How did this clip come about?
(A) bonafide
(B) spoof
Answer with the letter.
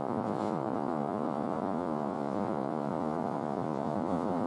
B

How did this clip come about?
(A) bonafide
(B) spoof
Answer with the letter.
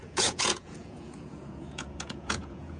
B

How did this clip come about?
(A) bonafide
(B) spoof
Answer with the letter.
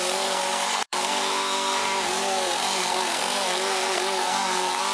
B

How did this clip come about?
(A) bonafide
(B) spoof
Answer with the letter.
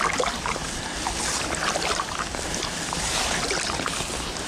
A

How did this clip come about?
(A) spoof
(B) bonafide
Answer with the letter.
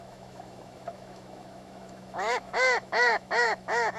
A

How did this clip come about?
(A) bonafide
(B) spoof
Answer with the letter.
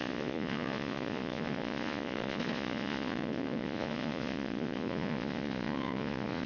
B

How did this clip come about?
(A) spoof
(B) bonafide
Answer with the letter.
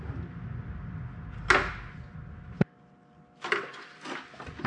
B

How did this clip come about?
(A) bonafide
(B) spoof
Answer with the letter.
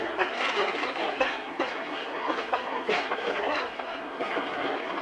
B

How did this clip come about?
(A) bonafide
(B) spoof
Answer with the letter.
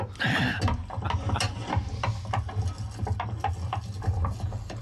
A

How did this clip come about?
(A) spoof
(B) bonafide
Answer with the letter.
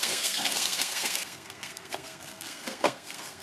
A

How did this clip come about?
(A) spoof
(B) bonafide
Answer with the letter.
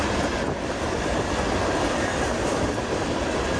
B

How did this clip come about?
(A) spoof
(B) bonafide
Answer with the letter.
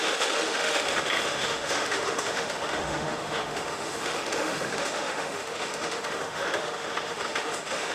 A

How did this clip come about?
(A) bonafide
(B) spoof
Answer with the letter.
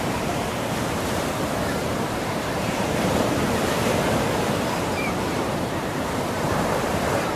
B